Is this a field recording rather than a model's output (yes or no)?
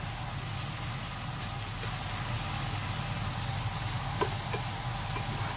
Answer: yes